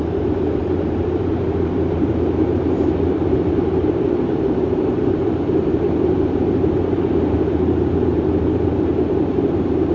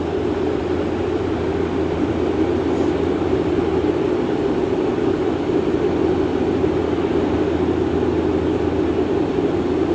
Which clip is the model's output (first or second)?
first